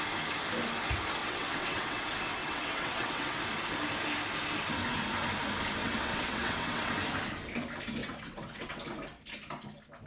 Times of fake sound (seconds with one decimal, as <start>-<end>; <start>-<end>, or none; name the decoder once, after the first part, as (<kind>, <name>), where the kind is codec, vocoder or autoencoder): 1.2-2.0 (vocoder, WaveNeXt); 2.4-3.4; 5.8-6.9; 8.0-8.8